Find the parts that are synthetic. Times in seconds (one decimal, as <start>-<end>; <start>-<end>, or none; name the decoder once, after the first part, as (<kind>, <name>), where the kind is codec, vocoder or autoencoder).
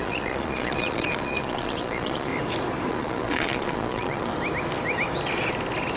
0.0-2.3 (vocoder, Vocos); 2.9-4.3